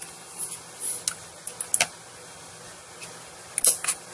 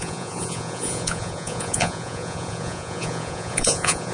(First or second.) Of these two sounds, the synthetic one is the second